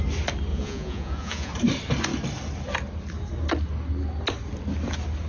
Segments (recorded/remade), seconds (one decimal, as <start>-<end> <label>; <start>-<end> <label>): 0.0-0.5 recorded; 0.5-1.5 remade; 1.5-5.3 recorded